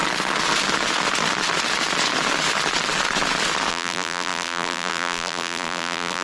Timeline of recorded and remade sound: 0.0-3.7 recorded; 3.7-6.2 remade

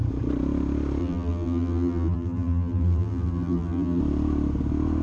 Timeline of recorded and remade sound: 0.0-1.0 recorded; 1.0-4.0 remade; 4.0-5.0 recorded